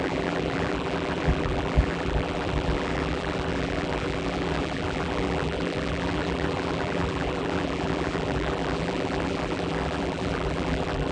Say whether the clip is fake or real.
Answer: fake